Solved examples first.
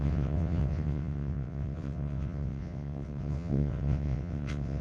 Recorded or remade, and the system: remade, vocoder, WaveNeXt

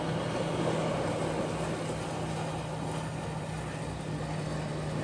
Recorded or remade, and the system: recorded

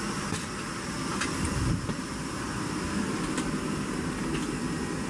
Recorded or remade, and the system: recorded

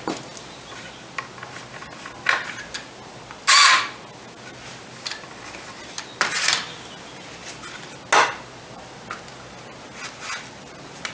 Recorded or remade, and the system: recorded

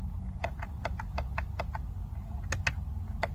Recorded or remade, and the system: recorded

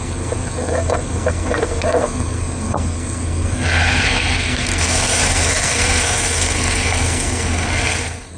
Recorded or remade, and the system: remade, codec, SNAC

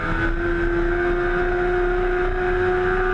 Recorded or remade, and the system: recorded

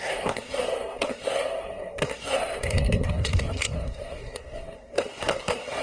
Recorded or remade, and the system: remade, codec, SNAC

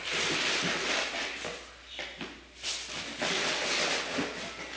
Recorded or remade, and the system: recorded